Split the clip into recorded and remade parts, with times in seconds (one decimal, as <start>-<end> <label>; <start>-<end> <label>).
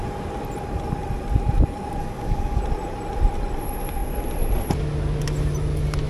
0.0-2.0 recorded; 2.0-2.6 remade; 2.6-6.1 recorded